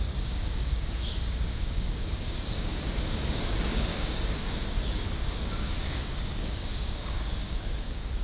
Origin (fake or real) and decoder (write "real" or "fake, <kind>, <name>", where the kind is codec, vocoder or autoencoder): fake, codec, DAC